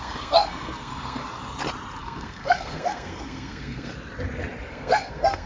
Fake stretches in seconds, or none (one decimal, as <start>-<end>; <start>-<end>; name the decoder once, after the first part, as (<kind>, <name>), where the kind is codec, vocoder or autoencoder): 0.0-1.2 (codec, SNAC); 2.0-3.9; 4.7-5.5